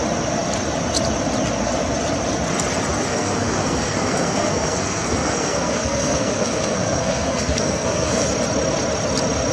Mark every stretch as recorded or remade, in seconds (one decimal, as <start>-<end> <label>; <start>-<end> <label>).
0.0-3.1 recorded; 3.1-8.2 remade; 8.2-9.5 recorded